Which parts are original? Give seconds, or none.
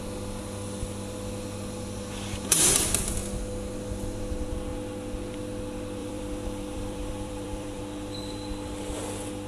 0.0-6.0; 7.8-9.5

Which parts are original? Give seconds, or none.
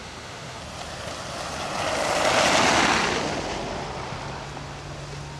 0.6-5.4